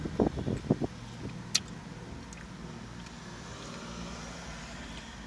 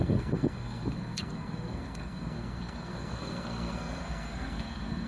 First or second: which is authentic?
first